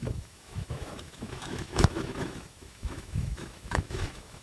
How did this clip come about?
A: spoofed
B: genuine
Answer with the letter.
A